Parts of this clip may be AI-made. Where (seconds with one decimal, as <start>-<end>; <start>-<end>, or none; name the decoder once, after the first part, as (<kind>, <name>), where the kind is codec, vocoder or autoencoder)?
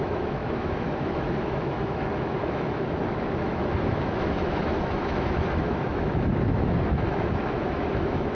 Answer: 0.0-8.3 (autoencoder, DAC-VAE)